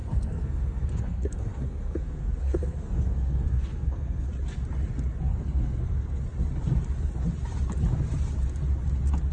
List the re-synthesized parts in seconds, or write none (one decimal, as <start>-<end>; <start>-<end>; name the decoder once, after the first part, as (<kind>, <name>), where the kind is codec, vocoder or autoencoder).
0.0-4.3 (codec, SNAC); 5.3-6.2